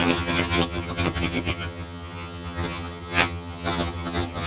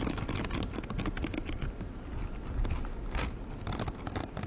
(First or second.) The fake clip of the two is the first